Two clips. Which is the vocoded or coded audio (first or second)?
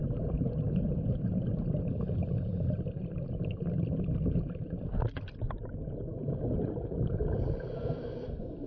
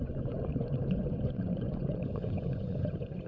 second